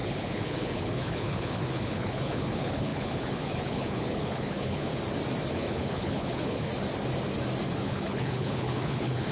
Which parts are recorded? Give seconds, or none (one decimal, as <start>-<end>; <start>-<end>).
4.9-5.5; 6.7-7.7